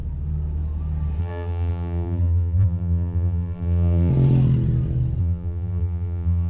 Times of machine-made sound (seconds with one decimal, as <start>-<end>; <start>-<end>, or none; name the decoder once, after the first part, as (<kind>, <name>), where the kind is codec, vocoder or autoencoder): 1.2-4.1 (vocoder, BigVGAN v2); 5.2-6.5